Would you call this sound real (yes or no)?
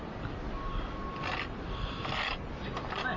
yes